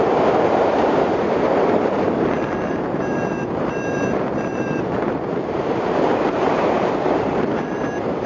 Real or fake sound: fake